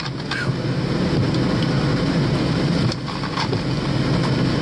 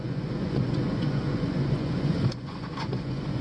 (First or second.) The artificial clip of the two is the second